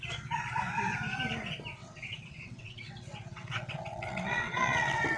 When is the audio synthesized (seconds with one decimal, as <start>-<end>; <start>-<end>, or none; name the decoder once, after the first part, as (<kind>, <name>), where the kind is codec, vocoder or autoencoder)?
1.8-5.2 (vocoder, WaveNeXt)

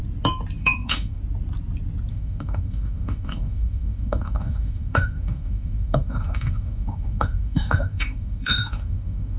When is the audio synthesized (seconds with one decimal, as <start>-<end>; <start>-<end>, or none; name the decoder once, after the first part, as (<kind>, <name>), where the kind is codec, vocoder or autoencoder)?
0.6-1.2 (autoencoder, DAC-VAE); 2.1-9.4

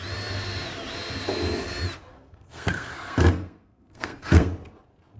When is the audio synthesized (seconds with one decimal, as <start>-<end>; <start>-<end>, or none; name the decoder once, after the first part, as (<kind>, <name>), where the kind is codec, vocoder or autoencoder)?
2.1-4.5 (codec, SNAC)

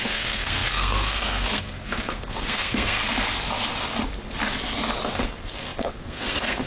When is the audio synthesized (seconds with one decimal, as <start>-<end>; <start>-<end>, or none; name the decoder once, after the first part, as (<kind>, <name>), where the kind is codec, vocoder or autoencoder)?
0.0-3.0 (codec, SNAC); 5.1-6.7

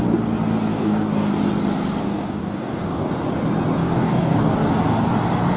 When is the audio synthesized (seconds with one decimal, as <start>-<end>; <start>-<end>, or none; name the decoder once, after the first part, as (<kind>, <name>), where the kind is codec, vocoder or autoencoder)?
0.7-1.3 (codec, DAC); 2.0-3.1; 3.8-4.7

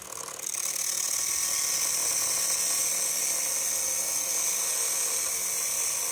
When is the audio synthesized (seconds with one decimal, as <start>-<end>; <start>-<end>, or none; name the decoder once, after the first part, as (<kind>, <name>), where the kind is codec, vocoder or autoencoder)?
none

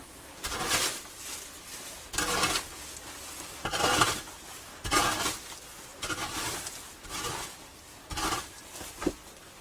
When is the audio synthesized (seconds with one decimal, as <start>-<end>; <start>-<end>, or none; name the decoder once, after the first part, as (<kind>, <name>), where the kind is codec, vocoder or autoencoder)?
none